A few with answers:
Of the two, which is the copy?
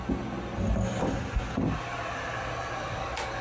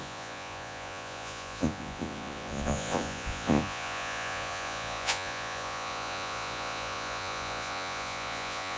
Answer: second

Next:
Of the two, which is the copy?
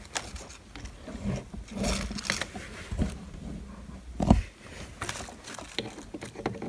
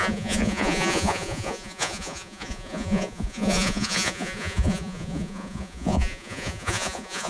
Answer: second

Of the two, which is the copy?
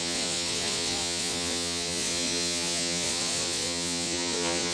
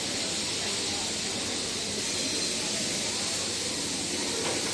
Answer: first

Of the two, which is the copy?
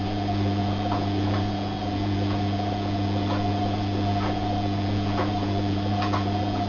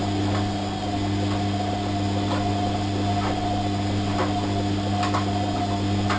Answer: first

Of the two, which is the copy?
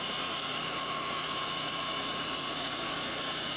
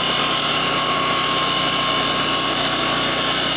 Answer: first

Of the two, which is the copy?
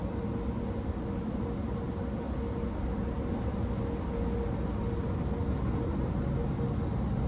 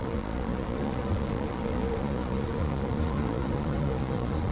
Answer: second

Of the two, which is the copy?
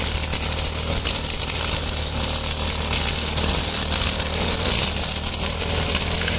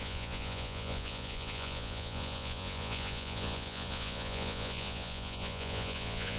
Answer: second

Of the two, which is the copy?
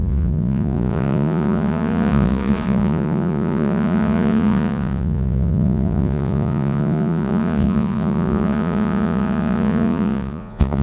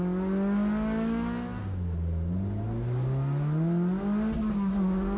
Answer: first